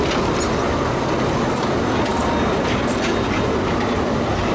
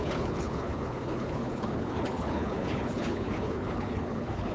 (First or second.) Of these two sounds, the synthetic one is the second